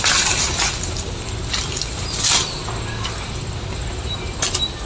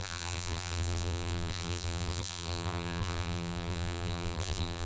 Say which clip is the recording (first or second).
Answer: first